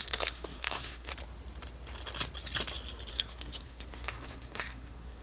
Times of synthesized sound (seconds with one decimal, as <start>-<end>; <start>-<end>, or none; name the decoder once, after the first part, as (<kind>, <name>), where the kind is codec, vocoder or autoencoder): 0.0-1.1 (codec, SNAC); 3.1-5.2